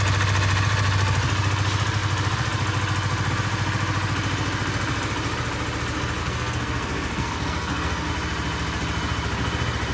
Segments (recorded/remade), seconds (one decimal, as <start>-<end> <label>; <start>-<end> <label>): 0.0-6.2 recorded; 6.2-8.1 remade; 8.1-9.9 recorded

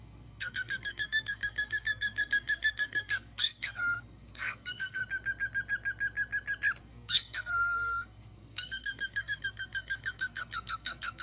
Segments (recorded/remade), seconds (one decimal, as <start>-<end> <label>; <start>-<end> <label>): 0.0-5.0 remade; 5.0-6.8 recorded; 6.8-11.2 remade

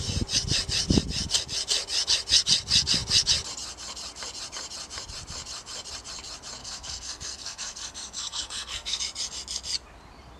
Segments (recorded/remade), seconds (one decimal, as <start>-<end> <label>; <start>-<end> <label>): 0.0-6.6 recorded; 6.6-9.0 remade; 9.0-10.4 recorded

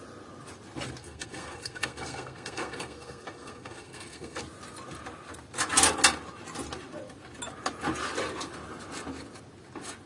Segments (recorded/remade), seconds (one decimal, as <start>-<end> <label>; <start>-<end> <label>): 0.0-1.0 recorded; 1.0-4.4 remade; 4.4-10.1 recorded

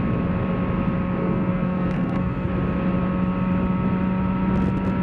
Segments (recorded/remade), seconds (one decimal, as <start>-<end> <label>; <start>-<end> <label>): 0.0-1.2 recorded; 1.2-2.5 remade; 2.5-5.0 recorded

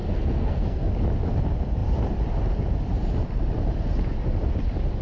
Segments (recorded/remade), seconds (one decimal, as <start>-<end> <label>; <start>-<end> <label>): 0.0-0.9 remade; 0.9-5.0 recorded

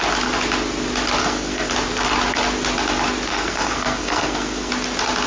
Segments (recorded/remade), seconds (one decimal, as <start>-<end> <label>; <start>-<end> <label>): 0.0-1.2 recorded; 1.2-1.7 remade; 1.7-3.3 recorded; 3.3-4.7 remade; 4.7-5.3 recorded

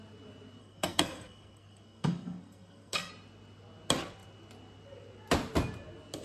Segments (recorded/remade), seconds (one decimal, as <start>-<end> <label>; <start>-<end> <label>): 0.0-0.6 recorded; 0.6-3.1 remade; 3.1-6.2 recorded